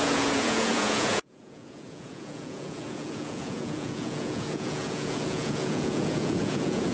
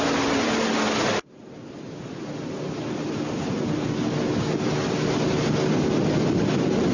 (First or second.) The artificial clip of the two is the first